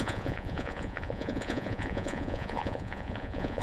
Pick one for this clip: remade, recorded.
remade